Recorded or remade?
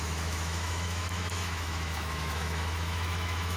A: remade